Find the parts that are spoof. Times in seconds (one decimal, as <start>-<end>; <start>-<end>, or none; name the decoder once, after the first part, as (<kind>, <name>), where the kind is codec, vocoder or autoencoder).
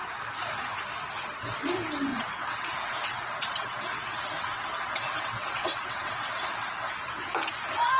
2.1-6.9 (vocoder, WaveNeXt)